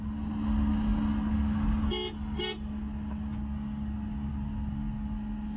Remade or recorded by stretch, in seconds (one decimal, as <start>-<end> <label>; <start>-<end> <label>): 0.0-5.6 recorded